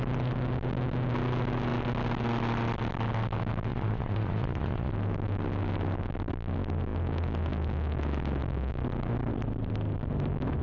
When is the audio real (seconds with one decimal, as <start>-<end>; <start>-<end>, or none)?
0.0-3.7; 4.9-10.6

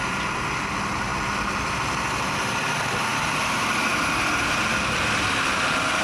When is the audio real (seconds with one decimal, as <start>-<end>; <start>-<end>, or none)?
0.0-6.0